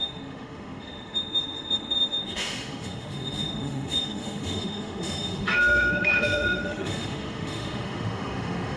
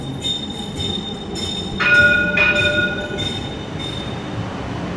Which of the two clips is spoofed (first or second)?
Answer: first